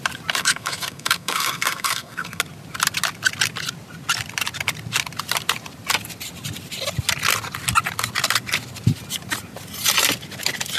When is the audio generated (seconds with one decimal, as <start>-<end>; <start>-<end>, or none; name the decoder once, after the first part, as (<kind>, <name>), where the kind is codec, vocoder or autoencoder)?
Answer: 0.4-2.4 (codec, SNAC)